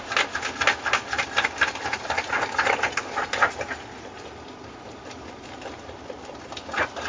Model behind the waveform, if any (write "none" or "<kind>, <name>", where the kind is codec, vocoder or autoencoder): none